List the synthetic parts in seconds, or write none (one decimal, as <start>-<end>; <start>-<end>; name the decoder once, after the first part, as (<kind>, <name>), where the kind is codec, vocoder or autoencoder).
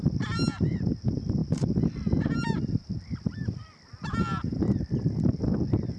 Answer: 4.4-5.4 (vocoder, BigVGAN v2)